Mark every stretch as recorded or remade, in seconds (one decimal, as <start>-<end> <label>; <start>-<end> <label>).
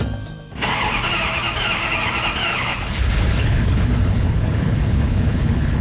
0.0-2.5 recorded; 2.5-5.8 remade